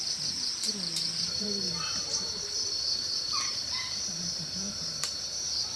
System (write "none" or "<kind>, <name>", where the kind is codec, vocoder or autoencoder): vocoder, BigVGAN v2